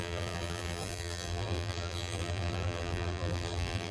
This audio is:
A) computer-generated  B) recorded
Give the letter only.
A